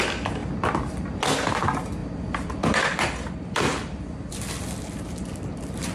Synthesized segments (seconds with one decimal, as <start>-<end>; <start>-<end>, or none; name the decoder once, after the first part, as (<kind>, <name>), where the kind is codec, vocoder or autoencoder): 2.0-4.8 (vocoder, BigVGAN v2)